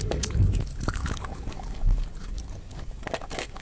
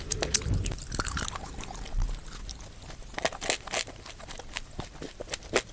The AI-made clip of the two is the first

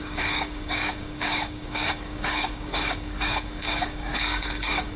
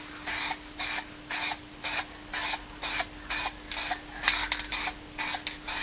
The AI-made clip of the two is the first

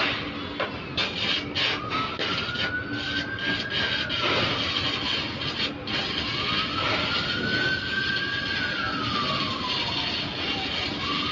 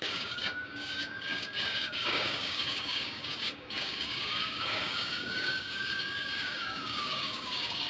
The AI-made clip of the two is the second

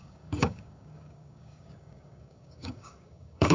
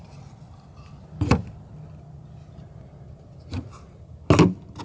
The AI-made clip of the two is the first